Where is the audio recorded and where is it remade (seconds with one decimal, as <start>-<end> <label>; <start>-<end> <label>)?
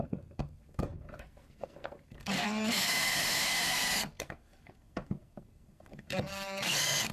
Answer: 0.0-7.1 remade